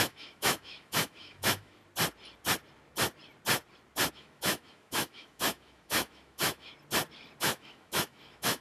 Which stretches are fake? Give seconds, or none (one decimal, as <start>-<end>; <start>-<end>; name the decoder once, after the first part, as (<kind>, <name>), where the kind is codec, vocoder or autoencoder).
0.0-1.8 (autoencoder, DAC-VAE); 4.1-6.7; 7.4-8.6